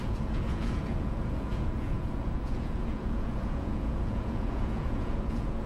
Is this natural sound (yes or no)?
no